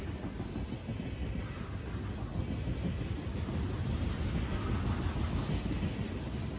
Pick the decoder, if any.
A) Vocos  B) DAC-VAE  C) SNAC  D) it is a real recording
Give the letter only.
D